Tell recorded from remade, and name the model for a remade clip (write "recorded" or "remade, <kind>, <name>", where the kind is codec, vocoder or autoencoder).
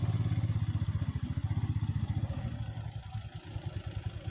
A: recorded